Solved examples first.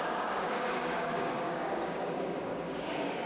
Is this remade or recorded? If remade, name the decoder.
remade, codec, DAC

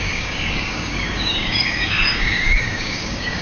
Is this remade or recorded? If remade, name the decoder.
remade, codec, DAC